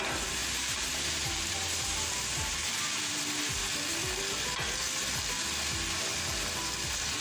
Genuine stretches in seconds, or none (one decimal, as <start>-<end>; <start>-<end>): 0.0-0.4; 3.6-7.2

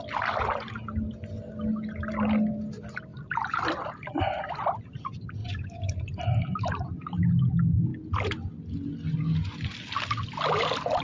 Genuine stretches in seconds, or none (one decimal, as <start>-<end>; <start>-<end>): 0.0-3.1; 3.7-5.4; 6.2-11.0

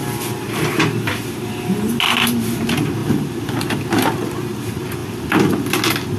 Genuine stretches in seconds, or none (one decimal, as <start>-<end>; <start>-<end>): 0.7-3.0; 3.7-5.0; 5.5-6.2

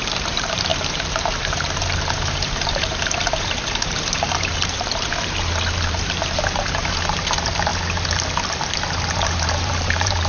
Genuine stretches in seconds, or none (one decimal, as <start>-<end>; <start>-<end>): 7.7-9.2

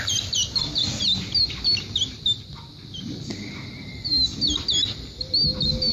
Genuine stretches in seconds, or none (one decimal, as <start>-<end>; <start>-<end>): 0.0-5.9

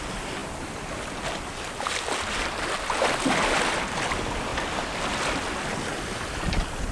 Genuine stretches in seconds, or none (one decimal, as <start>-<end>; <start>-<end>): 0.0-6.9

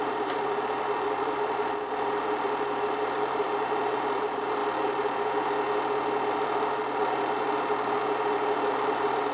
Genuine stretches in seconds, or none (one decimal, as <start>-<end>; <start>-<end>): 4.6-6.3; 8.0-8.7